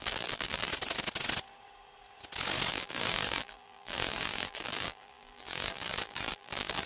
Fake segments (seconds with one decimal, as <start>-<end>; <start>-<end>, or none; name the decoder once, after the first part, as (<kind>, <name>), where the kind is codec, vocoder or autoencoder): 0.0-0.7 (vocoder, BigVGAN v2); 2.7-6.9